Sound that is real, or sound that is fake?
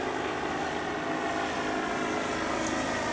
real